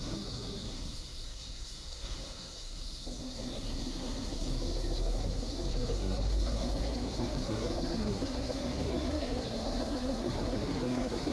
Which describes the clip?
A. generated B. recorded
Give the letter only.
A